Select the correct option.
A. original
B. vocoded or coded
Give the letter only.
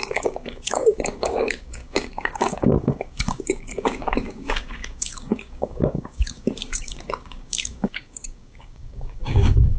B